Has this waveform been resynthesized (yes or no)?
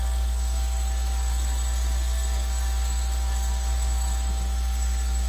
yes